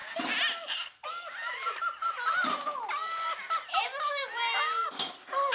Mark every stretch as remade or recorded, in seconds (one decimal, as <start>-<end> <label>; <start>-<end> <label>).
0.0-5.5 recorded